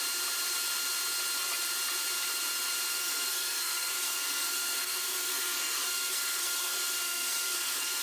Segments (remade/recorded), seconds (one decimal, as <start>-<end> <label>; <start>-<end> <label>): 0.0-2.9 recorded; 2.9-8.0 remade